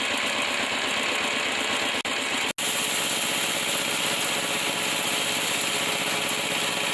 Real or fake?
real